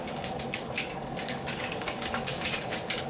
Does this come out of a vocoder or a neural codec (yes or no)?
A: yes